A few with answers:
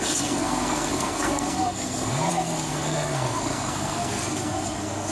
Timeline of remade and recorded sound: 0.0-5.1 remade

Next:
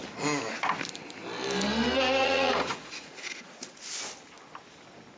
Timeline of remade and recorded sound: 0.0-2.2 recorded; 2.2-3.8 remade; 3.8-5.2 recorded

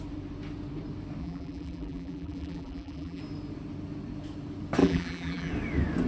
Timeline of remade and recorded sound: 0.0-1.2 recorded; 1.2-3.2 remade; 3.2-4.8 recorded; 4.8-5.5 remade; 5.5-6.1 recorded

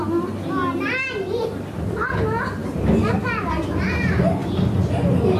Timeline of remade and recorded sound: 0.0-5.4 recorded

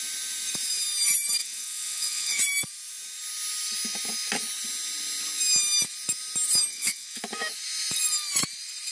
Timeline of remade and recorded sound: 0.0-1.4 recorded; 1.4-2.4 remade; 2.4-6.7 recorded; 6.7-7.2 remade; 7.2-8.9 recorded

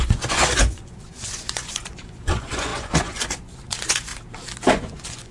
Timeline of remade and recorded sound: 0.0-4.1 remade; 4.1-4.7 recorded; 4.7-5.3 remade